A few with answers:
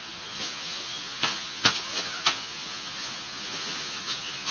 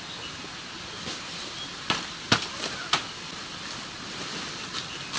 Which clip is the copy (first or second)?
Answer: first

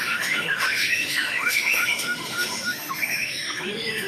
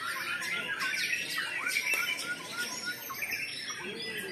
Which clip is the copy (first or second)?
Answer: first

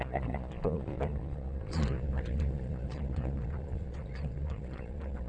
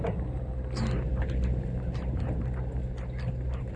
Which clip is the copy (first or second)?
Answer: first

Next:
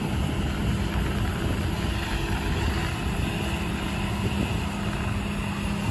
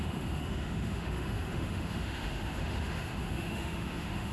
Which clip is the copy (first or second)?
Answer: second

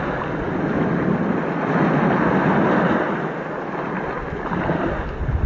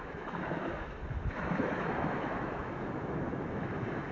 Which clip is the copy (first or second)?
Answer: second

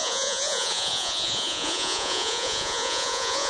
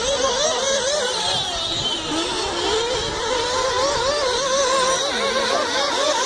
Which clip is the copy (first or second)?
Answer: first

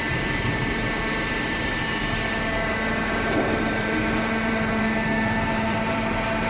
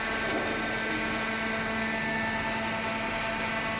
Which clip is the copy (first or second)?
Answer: first